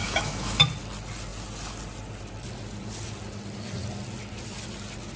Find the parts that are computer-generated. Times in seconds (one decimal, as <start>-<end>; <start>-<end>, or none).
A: 0.0-0.6